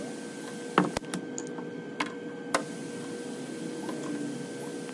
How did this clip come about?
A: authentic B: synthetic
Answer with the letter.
A